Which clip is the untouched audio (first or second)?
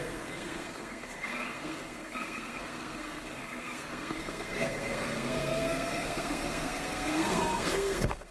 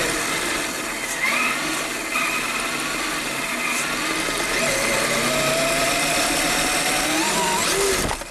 second